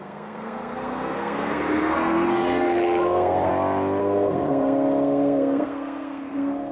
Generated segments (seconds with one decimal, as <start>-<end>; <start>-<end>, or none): 0.0-3.5; 4.0-6.7